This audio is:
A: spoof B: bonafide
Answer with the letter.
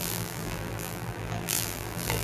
A